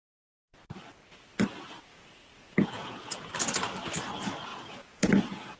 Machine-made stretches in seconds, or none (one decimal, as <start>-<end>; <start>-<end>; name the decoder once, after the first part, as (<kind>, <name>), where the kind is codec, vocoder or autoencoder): 1.9-3.3 (vocoder, Vocos); 4.5-5.6